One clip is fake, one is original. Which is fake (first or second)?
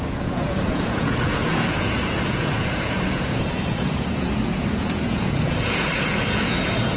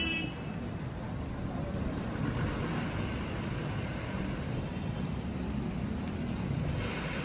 first